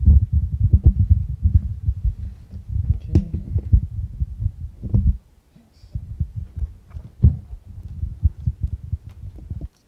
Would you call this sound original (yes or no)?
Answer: yes